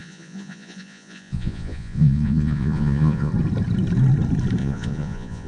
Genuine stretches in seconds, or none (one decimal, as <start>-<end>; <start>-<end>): 3.3-4.6